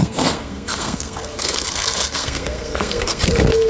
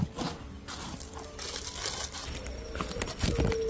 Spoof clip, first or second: first